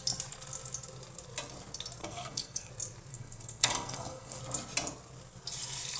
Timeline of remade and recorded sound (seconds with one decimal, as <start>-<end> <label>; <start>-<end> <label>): 0.0-2.0 recorded; 2.0-2.7 remade; 2.7-3.1 recorded; 3.1-4.4 remade; 4.4-6.0 recorded